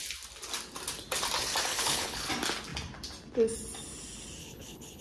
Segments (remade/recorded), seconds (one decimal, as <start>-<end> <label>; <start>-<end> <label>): 0.0-1.7 recorded; 1.7-2.3 remade; 2.3-4.4 recorded; 4.4-5.0 remade